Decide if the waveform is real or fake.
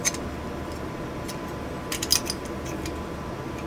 real